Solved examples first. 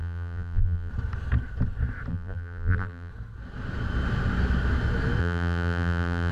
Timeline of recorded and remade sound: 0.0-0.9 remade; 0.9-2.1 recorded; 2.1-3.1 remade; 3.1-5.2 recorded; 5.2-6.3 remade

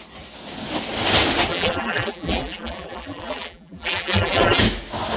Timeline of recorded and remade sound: 0.0-1.5 recorded; 1.5-4.6 remade; 4.6-5.2 recorded

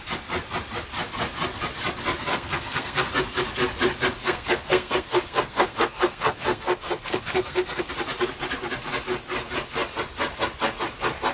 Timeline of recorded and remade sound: 0.0-2.3 recorded; 2.3-3.1 remade; 3.1-4.2 recorded; 4.2-7.9 remade; 7.9-11.3 recorded

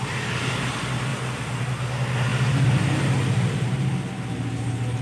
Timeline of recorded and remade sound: 0.0-5.0 recorded